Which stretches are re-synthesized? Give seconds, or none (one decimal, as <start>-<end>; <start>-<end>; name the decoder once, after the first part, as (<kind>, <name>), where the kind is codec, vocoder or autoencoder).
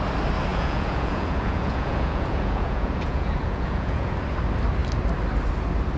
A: 0.5-4.1 (vocoder, Vocos)